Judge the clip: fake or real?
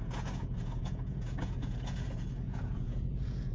fake